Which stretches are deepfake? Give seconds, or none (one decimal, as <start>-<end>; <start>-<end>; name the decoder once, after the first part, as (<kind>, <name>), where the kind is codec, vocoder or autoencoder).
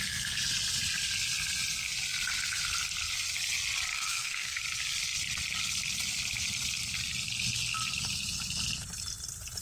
3.9-4.6 (codec, SNAC)